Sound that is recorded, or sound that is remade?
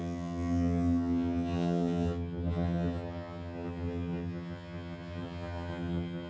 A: remade